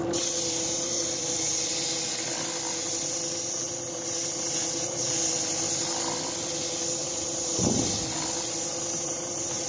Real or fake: real